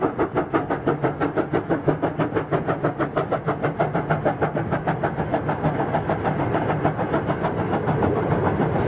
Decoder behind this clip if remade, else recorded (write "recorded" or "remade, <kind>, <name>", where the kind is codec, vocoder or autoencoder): recorded